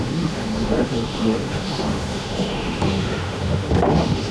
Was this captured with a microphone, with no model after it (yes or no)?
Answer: no